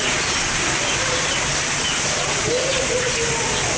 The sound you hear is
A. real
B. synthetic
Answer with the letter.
A